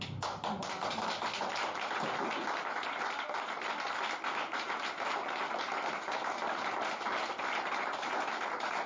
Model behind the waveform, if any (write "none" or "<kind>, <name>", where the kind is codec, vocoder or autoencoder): none